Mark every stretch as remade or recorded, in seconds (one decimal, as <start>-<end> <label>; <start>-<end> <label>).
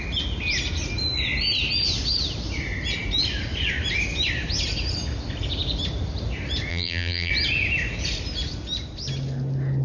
0.0-6.7 recorded; 6.7-7.3 remade; 7.3-9.8 recorded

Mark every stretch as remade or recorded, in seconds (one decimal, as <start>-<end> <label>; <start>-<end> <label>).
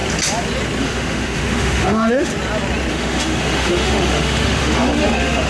0.0-0.8 recorded; 0.8-2.3 remade; 2.3-2.9 recorded; 2.9-5.5 remade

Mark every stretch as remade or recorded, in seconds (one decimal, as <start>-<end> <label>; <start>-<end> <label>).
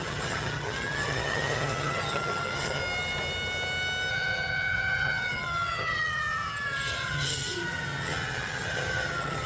0.0-2.8 remade; 2.8-4.1 recorded; 4.1-9.5 remade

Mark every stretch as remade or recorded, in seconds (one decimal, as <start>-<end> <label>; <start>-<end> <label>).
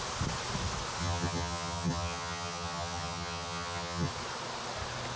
0.0-1.0 recorded; 1.0-4.1 remade; 4.1-5.2 recorded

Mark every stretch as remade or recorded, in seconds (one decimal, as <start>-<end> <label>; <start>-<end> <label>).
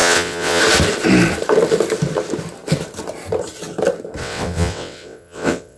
0.0-0.6 remade; 0.6-4.2 recorded; 4.2-5.8 remade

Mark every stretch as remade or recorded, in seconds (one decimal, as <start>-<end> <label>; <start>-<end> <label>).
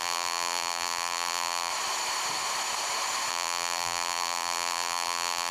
0.0-1.7 remade; 1.7-3.3 recorded; 3.3-5.5 remade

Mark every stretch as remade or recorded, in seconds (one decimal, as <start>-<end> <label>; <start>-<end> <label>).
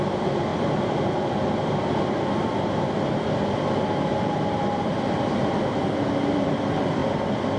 0.0-0.5 remade; 0.5-4.1 recorded; 4.1-7.0 remade; 7.0-7.6 recorded